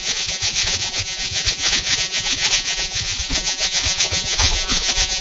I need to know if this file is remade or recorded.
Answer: remade